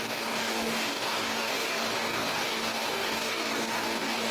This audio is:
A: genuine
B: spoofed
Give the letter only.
B